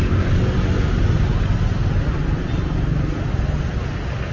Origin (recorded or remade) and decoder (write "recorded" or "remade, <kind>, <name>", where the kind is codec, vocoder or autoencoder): recorded